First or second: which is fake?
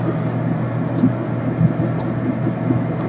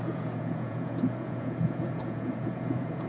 second